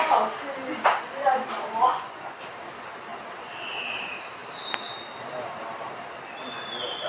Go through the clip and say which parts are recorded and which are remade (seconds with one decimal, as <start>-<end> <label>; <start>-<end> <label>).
0.0-1.9 recorded; 1.9-2.4 remade; 2.4-7.1 recorded